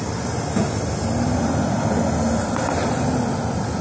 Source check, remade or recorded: recorded